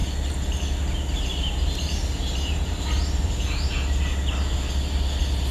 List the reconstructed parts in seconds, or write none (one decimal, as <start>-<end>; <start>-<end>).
1.3-3.7

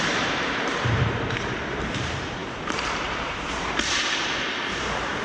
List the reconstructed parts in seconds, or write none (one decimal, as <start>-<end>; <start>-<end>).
0.0-5.2

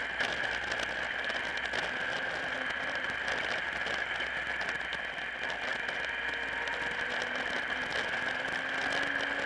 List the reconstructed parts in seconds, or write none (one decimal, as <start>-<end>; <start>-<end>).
none

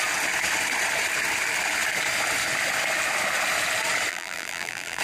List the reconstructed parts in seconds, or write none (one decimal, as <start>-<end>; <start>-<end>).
4.1-5.0